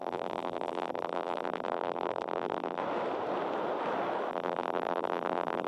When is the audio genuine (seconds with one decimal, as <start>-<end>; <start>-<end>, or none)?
2.8-4.3